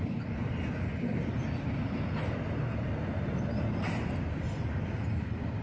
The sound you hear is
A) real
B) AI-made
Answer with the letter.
A